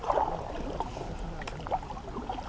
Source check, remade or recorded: recorded